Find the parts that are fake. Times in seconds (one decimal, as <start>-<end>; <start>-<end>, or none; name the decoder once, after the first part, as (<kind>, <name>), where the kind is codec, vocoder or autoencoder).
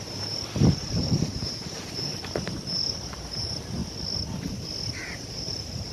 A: 0.0-3.8 (vocoder, BigVGAN v2); 5.3-5.9